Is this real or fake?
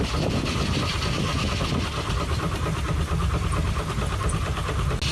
real